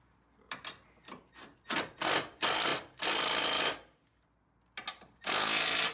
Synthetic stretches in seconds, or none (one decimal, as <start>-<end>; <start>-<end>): none